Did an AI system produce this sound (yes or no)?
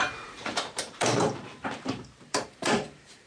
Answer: yes